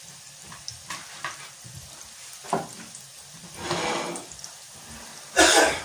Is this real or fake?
real